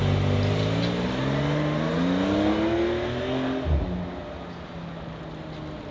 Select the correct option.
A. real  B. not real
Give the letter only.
A